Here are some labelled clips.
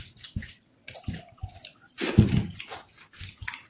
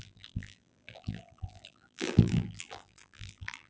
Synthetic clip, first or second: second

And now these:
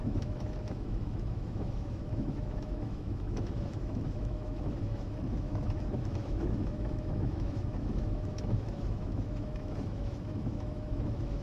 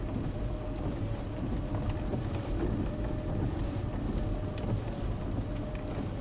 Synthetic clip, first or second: first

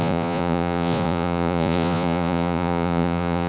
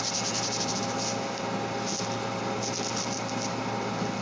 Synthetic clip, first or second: first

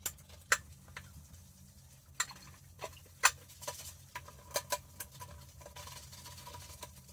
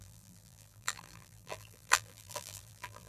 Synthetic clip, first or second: second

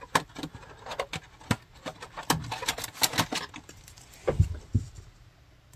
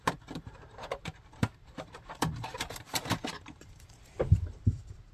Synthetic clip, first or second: second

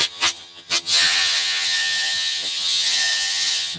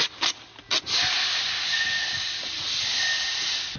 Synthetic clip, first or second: first